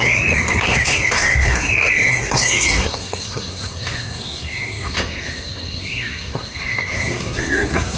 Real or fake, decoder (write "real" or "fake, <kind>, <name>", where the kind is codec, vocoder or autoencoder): fake, codec, SNAC